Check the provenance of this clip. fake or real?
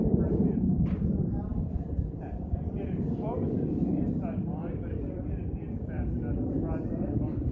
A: fake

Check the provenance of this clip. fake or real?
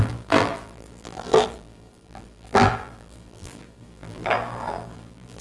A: fake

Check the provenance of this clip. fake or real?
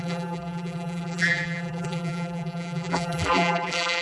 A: fake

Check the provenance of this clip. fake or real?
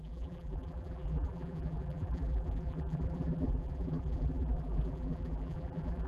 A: fake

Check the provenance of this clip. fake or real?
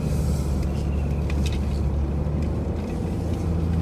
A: real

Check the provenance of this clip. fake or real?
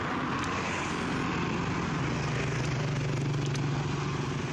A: real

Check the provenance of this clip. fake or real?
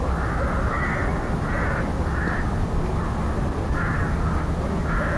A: real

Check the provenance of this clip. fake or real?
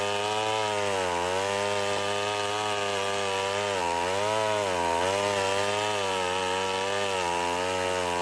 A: real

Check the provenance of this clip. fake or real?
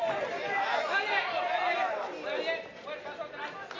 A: real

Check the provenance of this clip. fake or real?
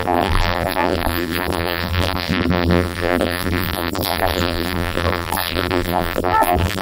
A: fake